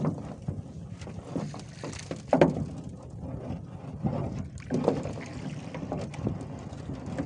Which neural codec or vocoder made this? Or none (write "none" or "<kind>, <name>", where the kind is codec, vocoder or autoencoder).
none